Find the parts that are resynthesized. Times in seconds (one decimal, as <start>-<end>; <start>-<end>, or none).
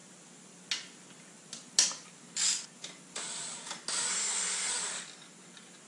4.1-4.7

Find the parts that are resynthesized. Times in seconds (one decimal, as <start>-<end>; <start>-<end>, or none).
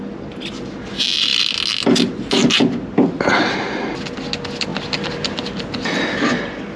none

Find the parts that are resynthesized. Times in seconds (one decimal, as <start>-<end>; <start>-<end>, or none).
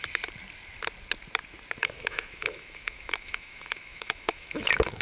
1.8-5.0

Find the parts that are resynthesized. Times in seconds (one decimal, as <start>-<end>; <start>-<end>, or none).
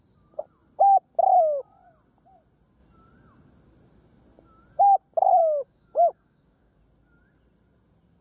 5.4-6.8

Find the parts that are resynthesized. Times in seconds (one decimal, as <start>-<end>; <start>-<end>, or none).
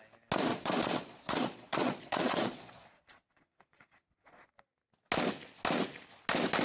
0.5-4.5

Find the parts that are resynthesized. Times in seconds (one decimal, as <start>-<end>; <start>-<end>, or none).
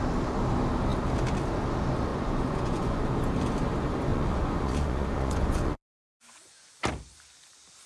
2.1-3.0; 4.1-6.7